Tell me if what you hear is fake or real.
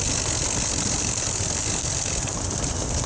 real